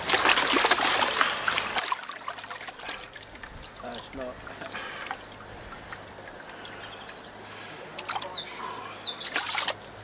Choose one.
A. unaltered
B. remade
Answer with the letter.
A